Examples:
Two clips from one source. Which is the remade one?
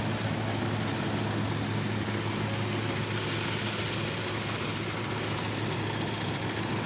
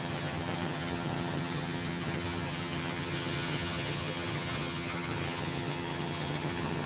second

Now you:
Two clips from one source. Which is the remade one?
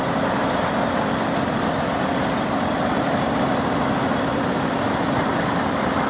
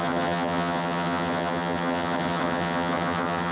second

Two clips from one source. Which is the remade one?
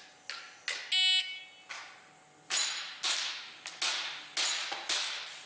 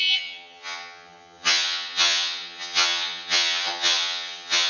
second